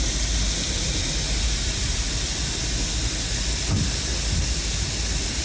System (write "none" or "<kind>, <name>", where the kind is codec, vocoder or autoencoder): none